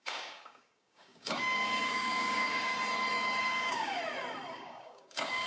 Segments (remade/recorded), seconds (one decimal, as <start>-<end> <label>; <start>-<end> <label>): 0.0-2.7 remade; 2.7-3.4 recorded; 3.4-4.0 remade; 4.0-4.5 recorded; 4.5-5.5 remade